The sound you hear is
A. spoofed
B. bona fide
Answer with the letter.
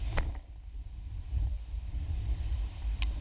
A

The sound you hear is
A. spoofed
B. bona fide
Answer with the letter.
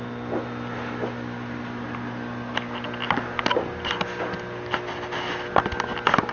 B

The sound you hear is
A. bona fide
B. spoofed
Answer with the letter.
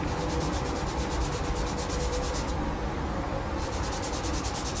B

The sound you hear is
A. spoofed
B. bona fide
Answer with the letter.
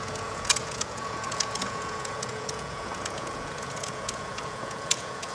A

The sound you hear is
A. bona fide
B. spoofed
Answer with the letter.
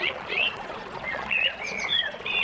B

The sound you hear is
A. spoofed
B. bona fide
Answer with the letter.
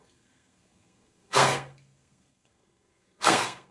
A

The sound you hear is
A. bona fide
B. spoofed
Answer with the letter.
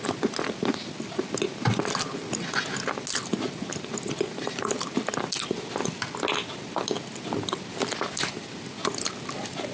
A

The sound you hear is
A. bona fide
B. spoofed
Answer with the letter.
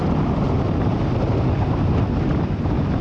A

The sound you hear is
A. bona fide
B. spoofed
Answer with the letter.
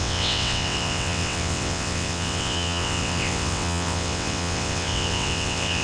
B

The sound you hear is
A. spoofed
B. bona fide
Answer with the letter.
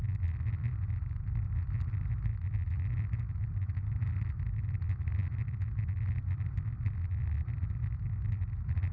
B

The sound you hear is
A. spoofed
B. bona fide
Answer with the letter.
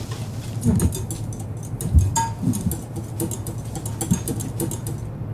B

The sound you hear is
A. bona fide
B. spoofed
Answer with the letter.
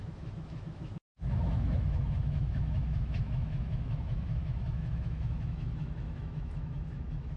B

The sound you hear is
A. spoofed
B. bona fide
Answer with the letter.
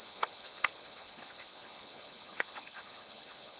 A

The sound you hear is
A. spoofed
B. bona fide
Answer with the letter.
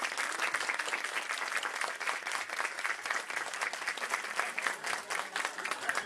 B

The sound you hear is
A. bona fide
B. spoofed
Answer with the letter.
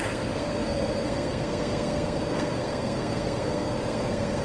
B